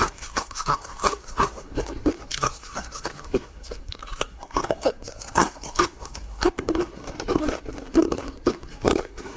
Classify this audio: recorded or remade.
remade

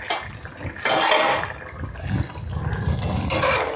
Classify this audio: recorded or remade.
recorded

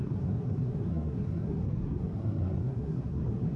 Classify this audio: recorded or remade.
remade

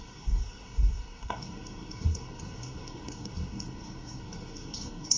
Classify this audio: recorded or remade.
remade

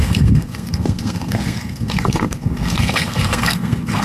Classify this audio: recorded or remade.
remade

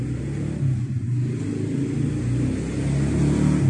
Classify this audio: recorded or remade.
recorded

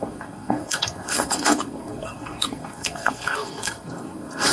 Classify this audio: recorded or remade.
remade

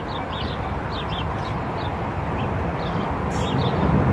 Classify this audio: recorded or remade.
recorded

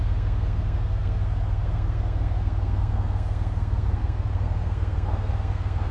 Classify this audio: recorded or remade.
remade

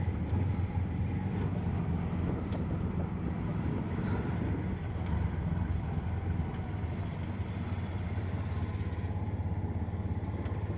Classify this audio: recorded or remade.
recorded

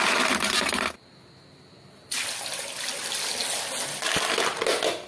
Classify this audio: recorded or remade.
recorded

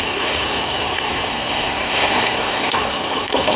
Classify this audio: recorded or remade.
remade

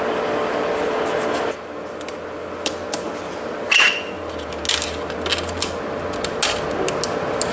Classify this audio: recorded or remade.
recorded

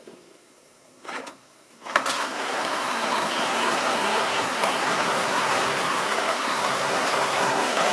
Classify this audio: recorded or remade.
remade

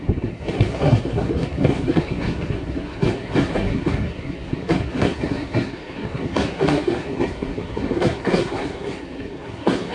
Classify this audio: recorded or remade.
remade